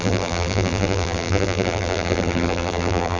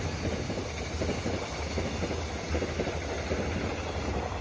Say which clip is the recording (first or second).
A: second